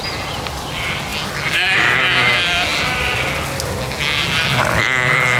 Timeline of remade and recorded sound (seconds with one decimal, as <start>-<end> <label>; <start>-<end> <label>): 0.0-5.4 recorded